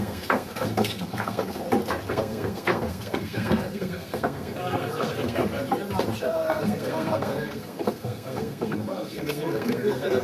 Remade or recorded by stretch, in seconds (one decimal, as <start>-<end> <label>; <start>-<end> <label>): 0.0-1.6 remade; 1.6-2.1 recorded; 2.1-5.4 remade; 5.4-6.2 recorded; 6.2-10.2 remade